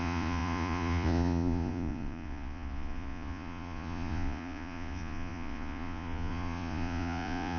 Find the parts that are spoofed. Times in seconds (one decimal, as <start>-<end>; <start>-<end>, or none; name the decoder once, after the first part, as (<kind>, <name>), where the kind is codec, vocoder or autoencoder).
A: 0.0-7.6 (vocoder, Vocos)